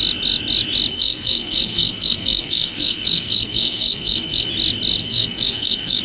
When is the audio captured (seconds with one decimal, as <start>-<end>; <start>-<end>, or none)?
0.0-0.9; 4.5-5.0